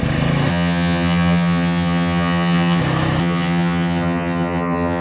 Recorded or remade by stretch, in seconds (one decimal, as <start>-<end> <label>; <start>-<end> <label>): 0.0-0.5 recorded; 0.5-2.8 remade; 2.8-3.2 recorded; 3.2-5.0 remade